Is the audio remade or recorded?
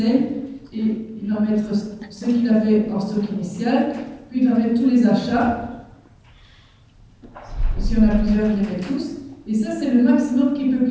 recorded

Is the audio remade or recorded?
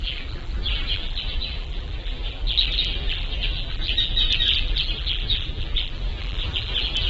remade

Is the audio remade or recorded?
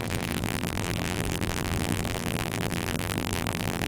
remade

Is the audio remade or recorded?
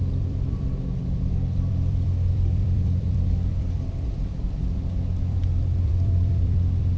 remade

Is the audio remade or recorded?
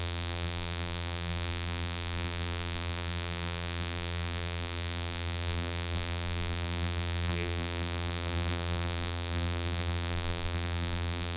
remade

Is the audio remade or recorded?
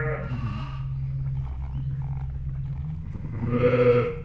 recorded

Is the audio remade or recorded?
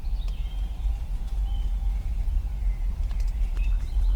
remade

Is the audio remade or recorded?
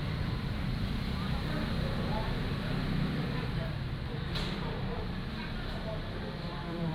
remade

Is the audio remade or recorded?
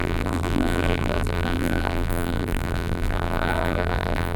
remade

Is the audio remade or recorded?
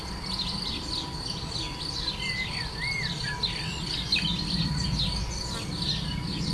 recorded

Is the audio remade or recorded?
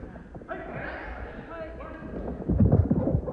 recorded